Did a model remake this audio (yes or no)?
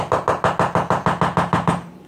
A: no